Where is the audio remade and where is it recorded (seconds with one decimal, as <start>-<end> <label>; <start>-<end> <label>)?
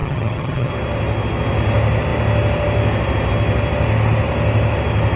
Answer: 0.0-0.7 remade; 0.7-5.2 recorded